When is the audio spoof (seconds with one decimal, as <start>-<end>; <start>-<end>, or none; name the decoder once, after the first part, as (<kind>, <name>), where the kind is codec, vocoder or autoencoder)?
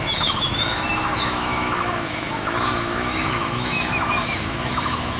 0.0-5.2 (autoencoder, DAC-VAE)